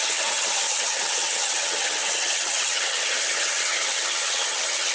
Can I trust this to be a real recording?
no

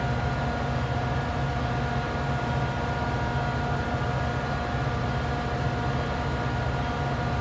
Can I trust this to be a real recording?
yes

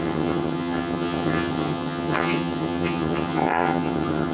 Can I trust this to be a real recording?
no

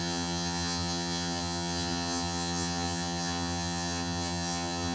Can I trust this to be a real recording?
no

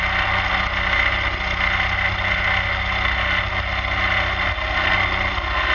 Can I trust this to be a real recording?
yes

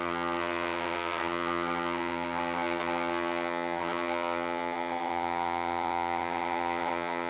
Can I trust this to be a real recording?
no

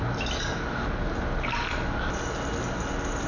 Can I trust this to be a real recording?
yes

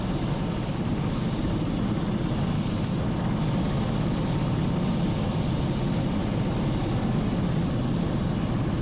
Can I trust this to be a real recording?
yes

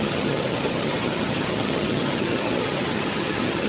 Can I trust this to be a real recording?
no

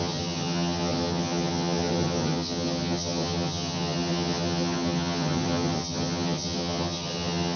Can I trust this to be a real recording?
no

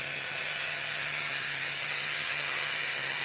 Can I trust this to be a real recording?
no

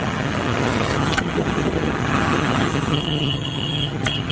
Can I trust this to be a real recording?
no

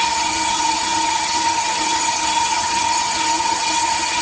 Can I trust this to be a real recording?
no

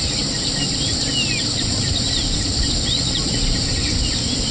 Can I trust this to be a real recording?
yes